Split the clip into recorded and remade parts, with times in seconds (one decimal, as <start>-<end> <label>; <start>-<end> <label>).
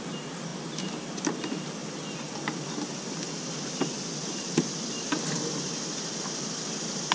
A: 0.0-7.1 recorded